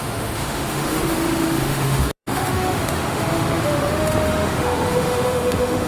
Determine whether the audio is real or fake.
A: fake